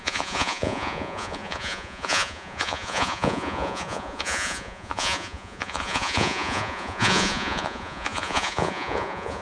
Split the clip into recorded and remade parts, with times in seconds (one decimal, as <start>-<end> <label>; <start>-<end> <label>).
0.0-9.4 remade

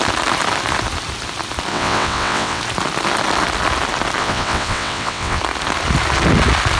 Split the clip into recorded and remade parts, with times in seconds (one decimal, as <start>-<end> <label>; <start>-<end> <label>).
0.0-1.7 recorded; 1.7-2.6 remade; 2.6-4.2 recorded; 4.2-5.4 remade; 5.4-6.8 recorded

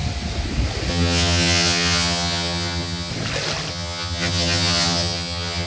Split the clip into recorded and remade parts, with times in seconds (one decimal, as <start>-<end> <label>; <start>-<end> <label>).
0.0-0.9 recorded; 0.9-3.1 remade; 3.1-3.7 recorded; 3.7-5.7 remade

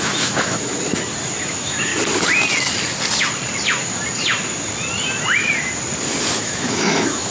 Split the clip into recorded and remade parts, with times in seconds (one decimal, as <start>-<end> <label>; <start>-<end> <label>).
0.0-0.7 remade; 0.7-1.4 recorded; 1.4-1.9 remade; 1.9-6.3 recorded; 6.3-7.3 remade

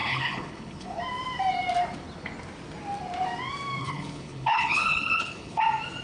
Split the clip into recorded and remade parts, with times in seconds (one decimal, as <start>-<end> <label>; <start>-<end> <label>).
0.0-1.0 remade; 1.0-3.8 recorded; 3.8-5.6 remade; 5.6-6.0 recorded